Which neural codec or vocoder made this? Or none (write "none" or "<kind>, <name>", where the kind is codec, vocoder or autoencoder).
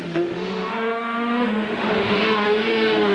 autoencoder, DAC-VAE